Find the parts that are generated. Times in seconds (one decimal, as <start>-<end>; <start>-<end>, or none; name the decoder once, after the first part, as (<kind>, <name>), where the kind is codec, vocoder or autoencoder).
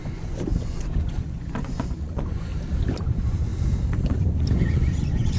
0.0-2.5 (vocoder, Vocos); 3.0-3.5; 4.1-5.4